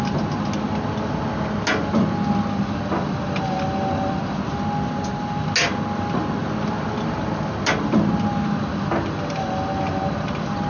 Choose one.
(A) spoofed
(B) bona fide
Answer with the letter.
B